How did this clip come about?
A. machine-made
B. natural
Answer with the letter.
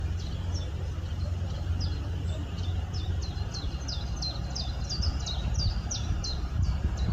B